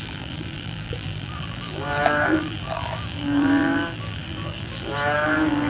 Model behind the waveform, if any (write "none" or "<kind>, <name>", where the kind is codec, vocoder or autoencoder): vocoder, BigVGAN v2